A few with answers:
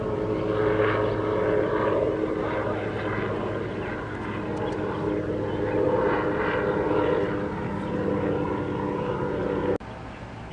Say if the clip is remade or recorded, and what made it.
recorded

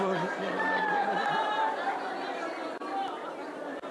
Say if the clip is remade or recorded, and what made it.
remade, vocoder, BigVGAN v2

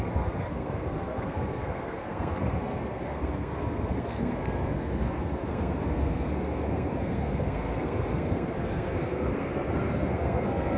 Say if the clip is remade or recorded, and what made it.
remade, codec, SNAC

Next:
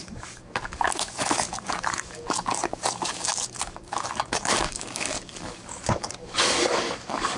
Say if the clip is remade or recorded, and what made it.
remade, codec, DAC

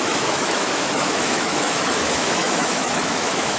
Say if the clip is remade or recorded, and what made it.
remade, autoencoder, DAC-VAE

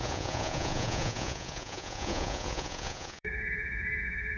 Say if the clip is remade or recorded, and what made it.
remade, vocoder, Vocos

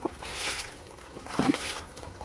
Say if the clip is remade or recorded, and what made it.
remade, codec, SNAC